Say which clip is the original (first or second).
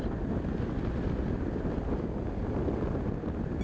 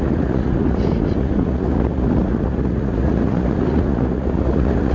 first